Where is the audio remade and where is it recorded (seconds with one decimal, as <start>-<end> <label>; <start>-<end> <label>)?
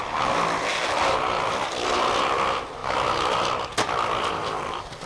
0.0-5.1 recorded